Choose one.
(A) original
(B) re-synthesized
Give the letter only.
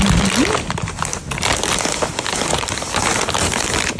A